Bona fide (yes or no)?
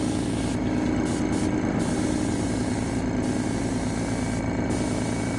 yes